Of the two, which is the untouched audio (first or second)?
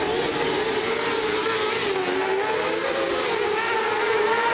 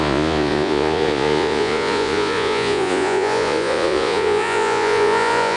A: first